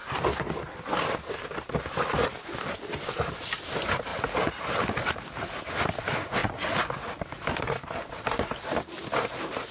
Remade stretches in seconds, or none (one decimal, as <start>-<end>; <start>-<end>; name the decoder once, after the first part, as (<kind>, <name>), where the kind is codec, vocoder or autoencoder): none